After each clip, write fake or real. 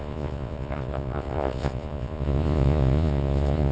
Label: fake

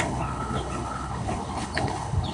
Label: fake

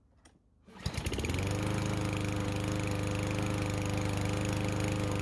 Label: real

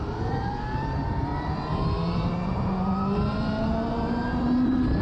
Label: fake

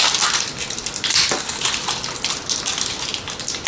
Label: real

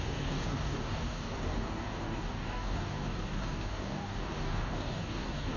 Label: fake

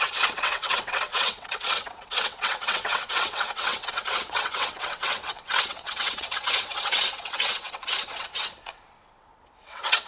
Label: fake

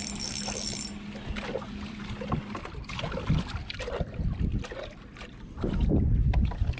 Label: real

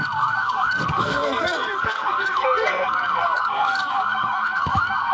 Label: fake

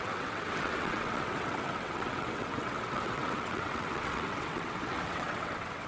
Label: fake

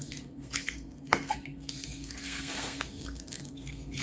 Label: fake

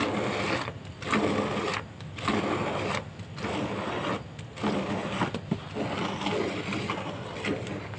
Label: real